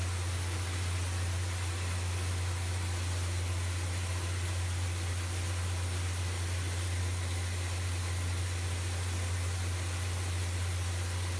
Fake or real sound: real